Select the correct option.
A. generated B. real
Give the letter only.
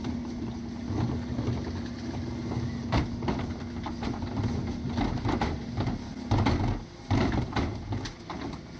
B